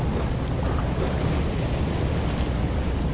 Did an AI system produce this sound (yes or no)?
no